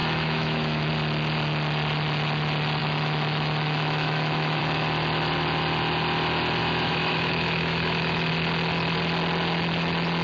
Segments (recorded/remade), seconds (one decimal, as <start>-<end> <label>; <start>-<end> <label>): 0.0-0.9 remade; 0.9-2.8 recorded; 2.8-4.6 remade; 4.6-6.6 recorded; 6.6-8.3 remade; 8.3-10.2 recorded